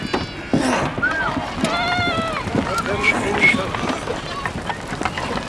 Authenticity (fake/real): real